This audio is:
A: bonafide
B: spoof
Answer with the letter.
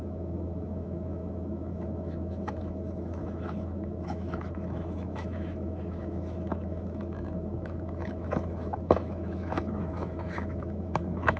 B